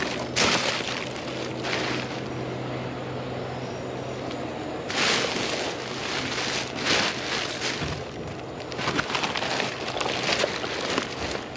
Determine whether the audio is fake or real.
real